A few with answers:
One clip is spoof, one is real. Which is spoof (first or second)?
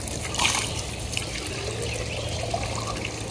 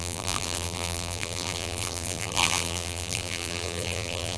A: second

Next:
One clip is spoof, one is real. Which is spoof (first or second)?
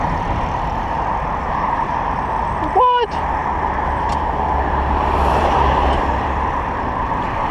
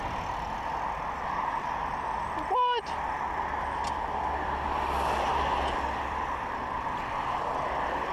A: first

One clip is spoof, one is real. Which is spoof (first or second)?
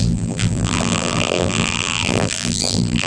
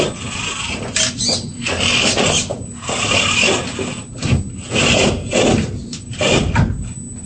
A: first